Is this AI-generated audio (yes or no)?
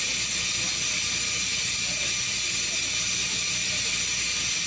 no